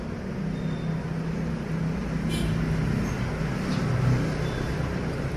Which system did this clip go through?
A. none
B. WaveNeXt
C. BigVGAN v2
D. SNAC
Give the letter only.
A